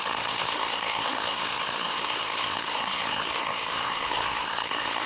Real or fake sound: fake